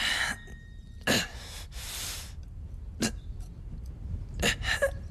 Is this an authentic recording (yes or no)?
yes